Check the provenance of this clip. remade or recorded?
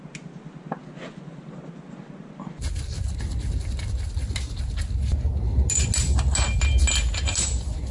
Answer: recorded